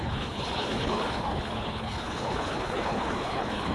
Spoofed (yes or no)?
yes